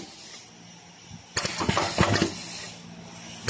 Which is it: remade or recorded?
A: recorded